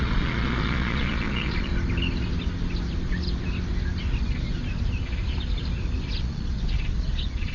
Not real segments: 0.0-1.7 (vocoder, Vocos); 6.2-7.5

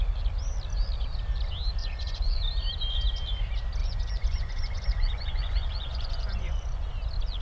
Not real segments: 1.8-2.4 (vocoder, Vocos); 3.8-6.9

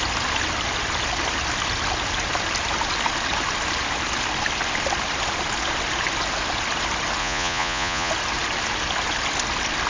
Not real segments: 7.2-8.1 (vocoder, Vocos)

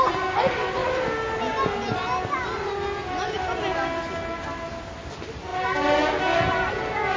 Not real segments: none

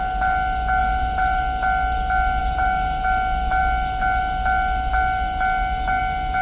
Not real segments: 0.8-1.4 (vocoder, Vocos); 2.4-3.0

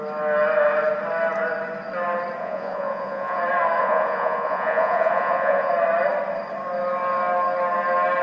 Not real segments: 2.4-3.4 (vocoder, Vocos); 3.8-5.7

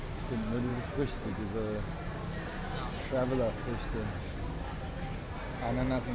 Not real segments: none